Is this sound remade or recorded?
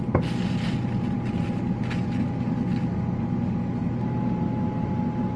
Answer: recorded